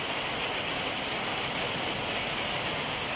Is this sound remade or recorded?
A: recorded